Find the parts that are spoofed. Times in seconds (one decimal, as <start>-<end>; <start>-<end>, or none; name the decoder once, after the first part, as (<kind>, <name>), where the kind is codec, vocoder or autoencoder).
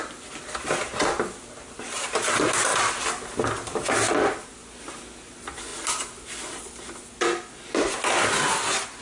none